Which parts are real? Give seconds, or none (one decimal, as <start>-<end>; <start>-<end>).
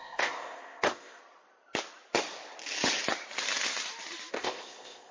1.2-4.3